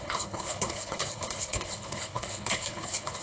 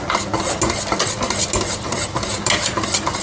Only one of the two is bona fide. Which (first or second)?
second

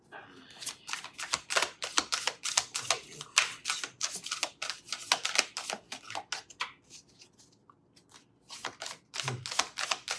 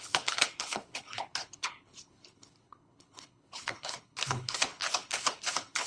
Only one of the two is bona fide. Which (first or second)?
first